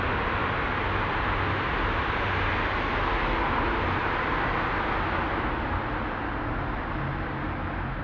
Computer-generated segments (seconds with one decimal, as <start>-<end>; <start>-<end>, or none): none